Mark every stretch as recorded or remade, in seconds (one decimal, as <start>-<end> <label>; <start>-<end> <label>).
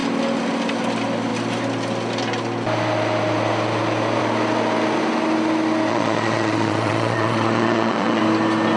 0.0-5.9 recorded; 5.9-8.2 remade; 8.2-8.8 recorded